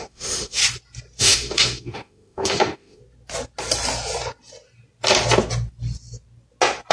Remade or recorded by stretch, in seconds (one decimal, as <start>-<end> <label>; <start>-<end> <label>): 0.0-0.6 remade; 0.6-1.2 recorded; 1.2-3.0 remade; 3.0-6.9 recorded